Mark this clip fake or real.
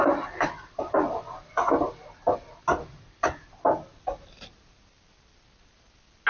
real